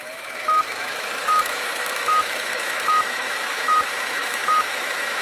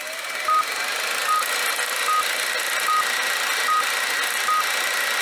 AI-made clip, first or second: first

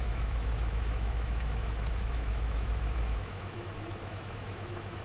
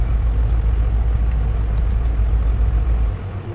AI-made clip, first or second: first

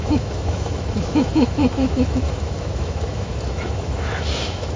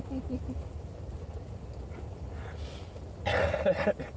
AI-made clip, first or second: first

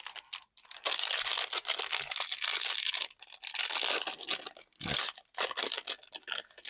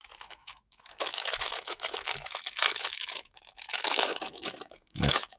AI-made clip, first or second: second